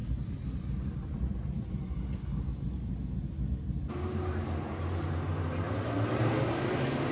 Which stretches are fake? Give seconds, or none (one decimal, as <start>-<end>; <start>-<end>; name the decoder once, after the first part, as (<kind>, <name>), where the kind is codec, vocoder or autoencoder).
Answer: none